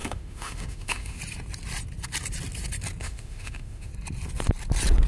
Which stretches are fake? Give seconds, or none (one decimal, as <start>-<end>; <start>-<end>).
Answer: 0.0-1.2; 3.0-3.9